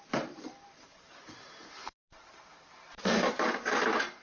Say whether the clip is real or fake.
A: fake